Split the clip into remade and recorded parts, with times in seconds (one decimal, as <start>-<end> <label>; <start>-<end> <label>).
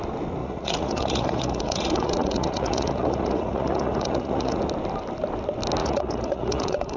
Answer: 0.0-0.4 recorded; 0.4-4.6 remade; 4.6-5.8 recorded; 5.8-7.0 remade